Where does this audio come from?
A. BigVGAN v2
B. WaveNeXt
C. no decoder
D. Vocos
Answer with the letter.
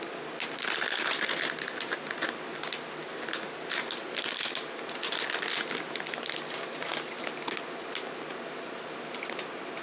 C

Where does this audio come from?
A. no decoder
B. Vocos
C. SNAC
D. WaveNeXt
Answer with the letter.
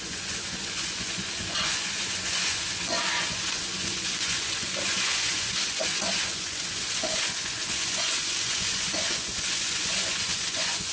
B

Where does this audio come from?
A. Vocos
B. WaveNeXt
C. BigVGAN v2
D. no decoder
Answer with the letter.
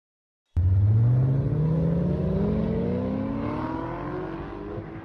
D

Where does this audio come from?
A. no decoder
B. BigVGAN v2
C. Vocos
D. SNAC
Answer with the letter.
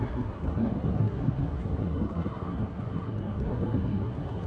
D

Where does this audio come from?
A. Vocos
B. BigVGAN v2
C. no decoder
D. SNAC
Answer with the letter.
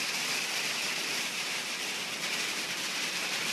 B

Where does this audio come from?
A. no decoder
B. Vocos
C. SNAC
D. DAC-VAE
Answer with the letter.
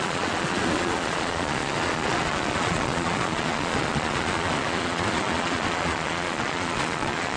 B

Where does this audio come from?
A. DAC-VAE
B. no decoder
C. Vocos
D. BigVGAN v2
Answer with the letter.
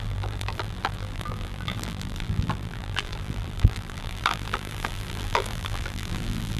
D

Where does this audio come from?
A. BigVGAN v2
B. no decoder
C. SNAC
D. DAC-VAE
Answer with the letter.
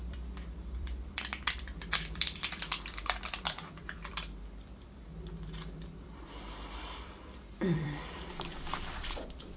A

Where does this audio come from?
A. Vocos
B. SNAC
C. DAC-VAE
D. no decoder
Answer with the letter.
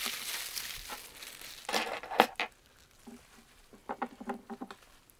D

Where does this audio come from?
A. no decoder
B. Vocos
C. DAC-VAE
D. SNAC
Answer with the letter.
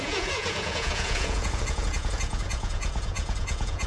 B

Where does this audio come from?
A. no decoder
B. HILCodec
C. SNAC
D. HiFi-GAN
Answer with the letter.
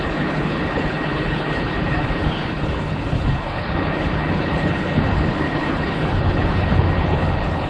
B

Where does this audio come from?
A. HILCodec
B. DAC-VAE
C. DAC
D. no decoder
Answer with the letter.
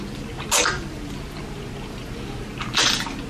D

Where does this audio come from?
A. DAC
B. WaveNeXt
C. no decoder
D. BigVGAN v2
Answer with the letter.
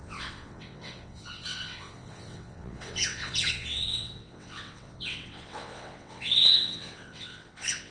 B